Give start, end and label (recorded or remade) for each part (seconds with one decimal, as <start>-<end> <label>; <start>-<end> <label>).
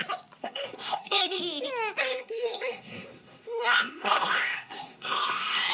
0.0-0.4 recorded; 0.4-1.4 remade; 1.4-2.0 recorded; 2.0-5.7 remade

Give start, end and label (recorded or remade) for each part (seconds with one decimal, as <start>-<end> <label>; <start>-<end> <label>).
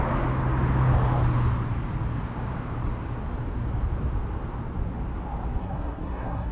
0.0-5.6 recorded; 5.6-6.5 remade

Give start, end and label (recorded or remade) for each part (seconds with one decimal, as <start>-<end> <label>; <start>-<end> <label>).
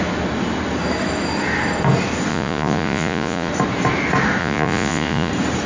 0.0-2.3 recorded; 2.3-3.5 remade; 3.5-4.4 recorded; 4.4-5.3 remade; 5.3-5.7 recorded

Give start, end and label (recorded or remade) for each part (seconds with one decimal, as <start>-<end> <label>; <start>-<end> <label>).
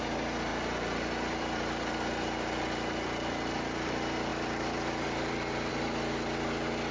0.0-0.5 recorded; 0.5-3.9 remade; 3.9-4.3 recorded; 4.3-5.7 remade; 5.7-6.9 recorded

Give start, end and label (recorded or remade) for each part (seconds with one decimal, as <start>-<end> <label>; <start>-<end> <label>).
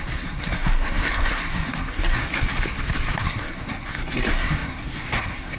0.0-2.4 remade; 2.4-3.2 recorded; 3.2-5.6 remade